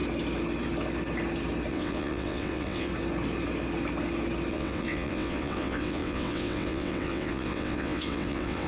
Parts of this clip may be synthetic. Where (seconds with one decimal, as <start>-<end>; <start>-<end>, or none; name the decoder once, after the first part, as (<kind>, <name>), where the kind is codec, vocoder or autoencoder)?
1.7-2.9 (vocoder, WaveNeXt); 4.5-8.7